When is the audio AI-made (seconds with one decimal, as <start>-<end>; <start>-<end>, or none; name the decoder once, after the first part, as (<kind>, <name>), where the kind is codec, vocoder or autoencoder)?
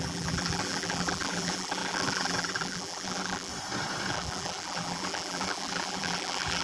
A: 0.0-3.5 (vocoder, BigVGAN v2); 4.1-6.6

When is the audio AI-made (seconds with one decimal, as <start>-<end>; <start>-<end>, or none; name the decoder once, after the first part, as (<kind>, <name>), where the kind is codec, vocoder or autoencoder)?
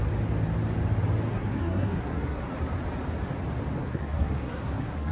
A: 1.3-2.4 (codec, SNAC); 3.8-5.1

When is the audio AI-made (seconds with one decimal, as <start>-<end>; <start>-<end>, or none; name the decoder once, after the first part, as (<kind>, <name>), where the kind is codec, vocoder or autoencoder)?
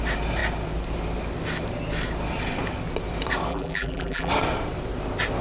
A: 3.5-4.3 (vocoder, BigVGAN v2)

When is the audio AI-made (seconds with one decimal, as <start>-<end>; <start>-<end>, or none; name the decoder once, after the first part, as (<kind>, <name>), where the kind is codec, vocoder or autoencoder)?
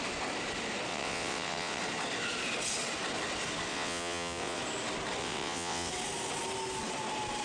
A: 0.9-1.8 (vocoder, WaveNeXt); 3.7-4.6; 5.2-5.9